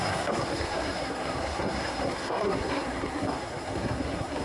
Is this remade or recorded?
remade